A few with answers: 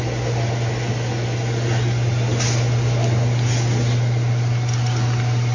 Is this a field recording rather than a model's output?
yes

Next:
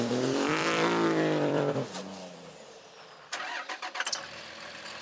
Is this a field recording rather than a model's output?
no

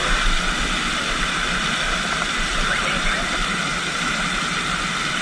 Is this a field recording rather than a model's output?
yes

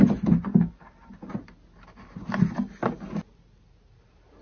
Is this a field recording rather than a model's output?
yes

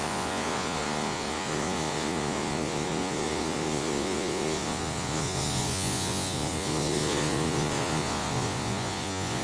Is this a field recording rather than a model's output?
no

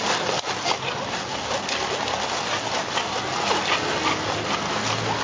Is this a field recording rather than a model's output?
yes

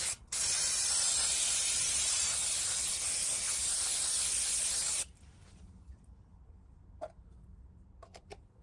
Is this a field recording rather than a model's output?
yes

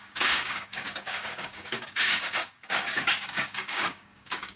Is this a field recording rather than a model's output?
no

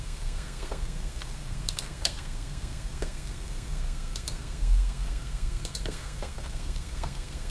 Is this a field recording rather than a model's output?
no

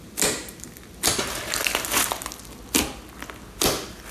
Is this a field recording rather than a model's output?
yes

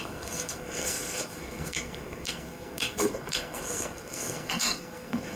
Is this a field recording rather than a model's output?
no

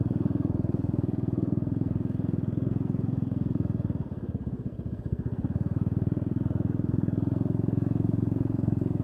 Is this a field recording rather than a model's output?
no